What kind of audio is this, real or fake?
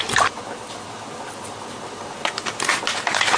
real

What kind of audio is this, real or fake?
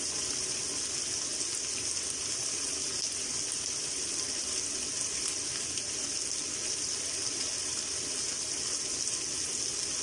real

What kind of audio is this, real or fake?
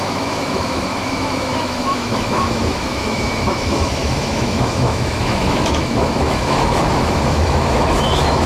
fake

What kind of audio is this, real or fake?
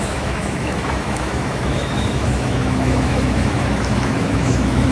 fake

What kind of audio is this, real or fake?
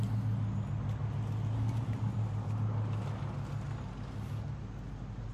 real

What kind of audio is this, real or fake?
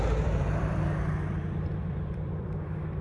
fake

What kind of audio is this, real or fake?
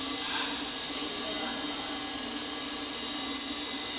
real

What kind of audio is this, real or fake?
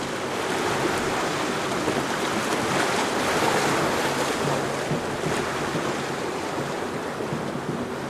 real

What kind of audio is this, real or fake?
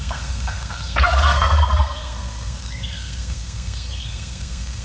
fake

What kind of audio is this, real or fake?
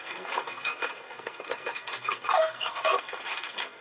fake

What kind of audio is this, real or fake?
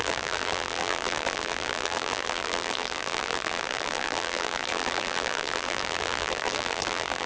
fake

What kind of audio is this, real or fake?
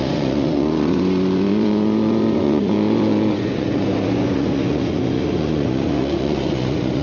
fake